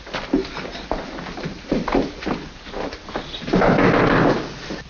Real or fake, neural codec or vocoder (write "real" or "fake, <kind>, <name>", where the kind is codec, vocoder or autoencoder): real